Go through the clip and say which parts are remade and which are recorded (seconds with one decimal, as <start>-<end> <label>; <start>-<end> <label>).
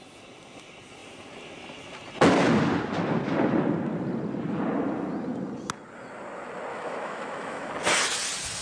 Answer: 0.0-6.7 recorded; 6.7-7.7 remade; 7.7-8.6 recorded